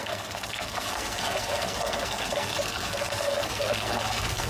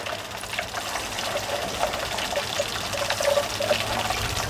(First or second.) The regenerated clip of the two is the first